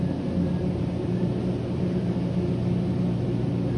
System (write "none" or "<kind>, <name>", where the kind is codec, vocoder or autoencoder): none